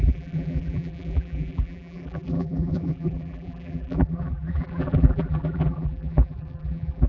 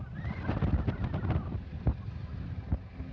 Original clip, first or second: second